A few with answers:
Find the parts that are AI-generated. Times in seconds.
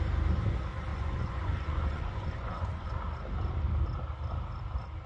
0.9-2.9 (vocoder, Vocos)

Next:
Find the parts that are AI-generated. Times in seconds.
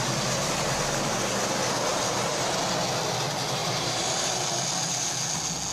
0.4-1.1 (vocoder, BigVGAN v2); 1.9-2.6; 3.6-4.3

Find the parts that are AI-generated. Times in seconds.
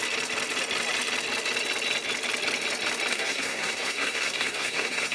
3.1-5.1 (codec, SNAC)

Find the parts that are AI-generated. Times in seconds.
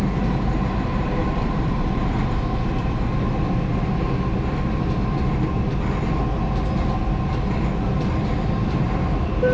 1.2-3.1 (vocoder, BigVGAN v2)